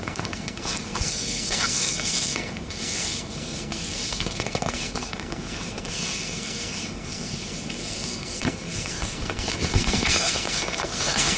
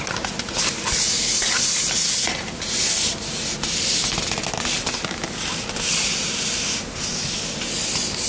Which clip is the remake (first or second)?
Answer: first